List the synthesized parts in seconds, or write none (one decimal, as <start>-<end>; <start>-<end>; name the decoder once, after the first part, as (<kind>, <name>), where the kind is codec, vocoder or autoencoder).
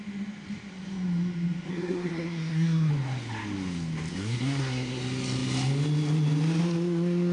1.7-2.9 (codec, SNAC); 4.1-5.0